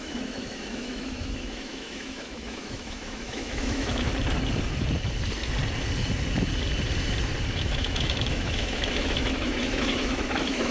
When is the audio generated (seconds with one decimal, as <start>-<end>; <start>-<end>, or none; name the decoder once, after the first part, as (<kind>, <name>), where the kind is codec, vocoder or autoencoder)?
0.0-4.1 (autoencoder, DAC-VAE); 7.5-10.7